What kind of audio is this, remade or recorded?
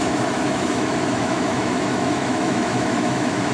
remade